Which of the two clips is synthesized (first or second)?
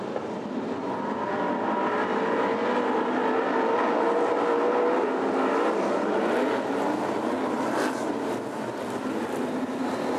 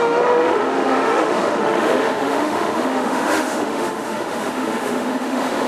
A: second